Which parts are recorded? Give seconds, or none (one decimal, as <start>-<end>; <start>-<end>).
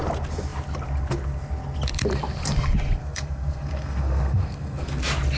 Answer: 0.0-3.0; 5.0-5.4